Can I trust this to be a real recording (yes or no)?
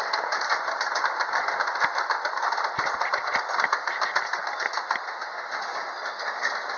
yes